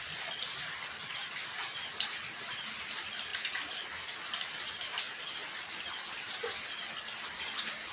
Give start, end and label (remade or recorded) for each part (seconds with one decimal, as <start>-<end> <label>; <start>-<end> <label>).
0.0-7.9 recorded